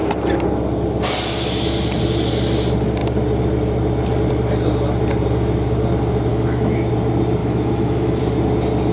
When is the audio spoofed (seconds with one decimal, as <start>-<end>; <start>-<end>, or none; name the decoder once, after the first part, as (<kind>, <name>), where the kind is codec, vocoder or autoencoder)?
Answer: 6.3-6.9 (autoencoder, DAC-VAE); 7.4-8.2